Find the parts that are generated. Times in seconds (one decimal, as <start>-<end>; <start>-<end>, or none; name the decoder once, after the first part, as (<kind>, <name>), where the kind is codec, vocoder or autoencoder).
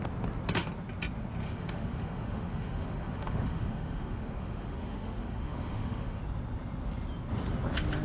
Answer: 1.4-6.2 (autoencoder, DAC-VAE)